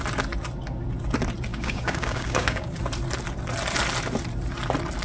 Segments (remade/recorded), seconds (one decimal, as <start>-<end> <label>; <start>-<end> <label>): 0.0-1.5 recorded; 1.5-2.8 remade; 2.8-5.0 recorded